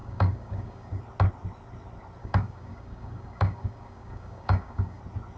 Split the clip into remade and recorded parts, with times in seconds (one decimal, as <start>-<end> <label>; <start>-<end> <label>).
0.0-1.0 remade; 1.0-2.2 recorded; 2.2-5.0 remade; 5.0-5.4 recorded